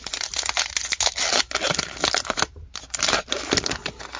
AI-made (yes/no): no